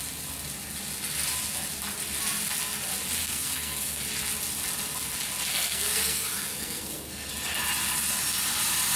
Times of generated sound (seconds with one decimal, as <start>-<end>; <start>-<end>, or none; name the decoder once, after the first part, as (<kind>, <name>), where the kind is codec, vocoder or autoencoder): 3.2-4.0 (codec, SNAC); 5.5-7.3